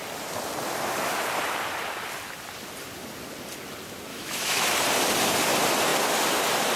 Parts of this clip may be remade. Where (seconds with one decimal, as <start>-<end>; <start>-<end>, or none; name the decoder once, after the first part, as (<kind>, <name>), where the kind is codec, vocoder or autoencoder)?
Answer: 4.1-4.7 (autoencoder, DAC-VAE)

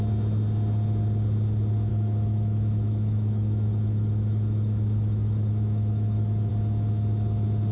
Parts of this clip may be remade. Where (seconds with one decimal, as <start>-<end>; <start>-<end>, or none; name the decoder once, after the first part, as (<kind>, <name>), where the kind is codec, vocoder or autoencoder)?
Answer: 1.9-6.5 (autoencoder, DAC-VAE)